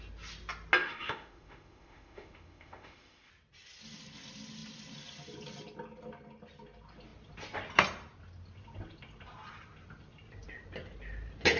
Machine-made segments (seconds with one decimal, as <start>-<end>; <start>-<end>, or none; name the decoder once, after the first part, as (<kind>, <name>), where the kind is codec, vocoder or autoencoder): 0.8-3.3 (autoencoder, DAC-VAE)